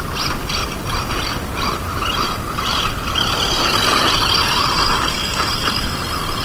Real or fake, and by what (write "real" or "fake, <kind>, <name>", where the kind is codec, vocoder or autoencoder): real